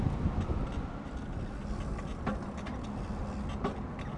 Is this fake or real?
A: real